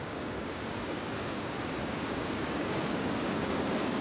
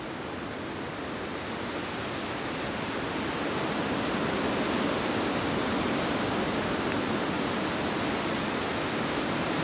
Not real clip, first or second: first